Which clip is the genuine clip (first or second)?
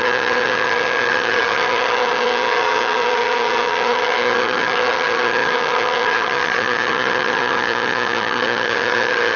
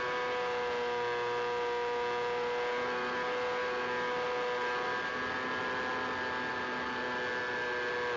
second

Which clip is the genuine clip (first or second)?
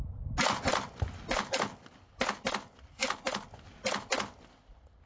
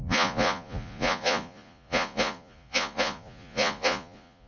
first